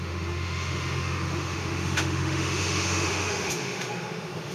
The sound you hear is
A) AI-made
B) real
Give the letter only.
A